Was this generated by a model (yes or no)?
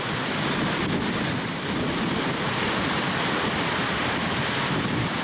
yes